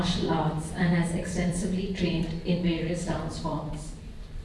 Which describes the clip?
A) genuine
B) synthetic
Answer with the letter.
B